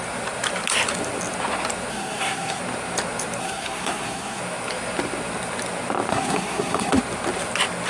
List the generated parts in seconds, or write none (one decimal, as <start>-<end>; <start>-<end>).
1.9-2.6; 3.4-4.4; 6.1-7.0